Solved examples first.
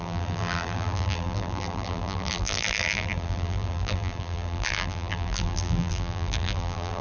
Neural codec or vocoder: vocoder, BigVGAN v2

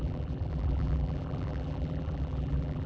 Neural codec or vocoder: vocoder, BigVGAN v2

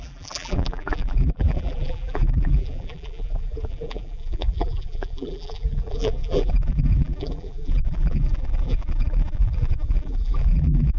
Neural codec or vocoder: vocoder, BigVGAN v2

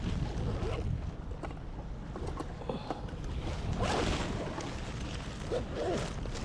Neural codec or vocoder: none